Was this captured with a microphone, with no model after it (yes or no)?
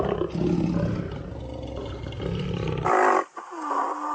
yes